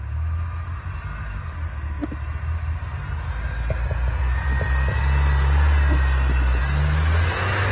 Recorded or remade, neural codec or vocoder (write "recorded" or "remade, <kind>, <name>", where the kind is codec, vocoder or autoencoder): recorded